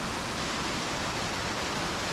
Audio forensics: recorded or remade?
recorded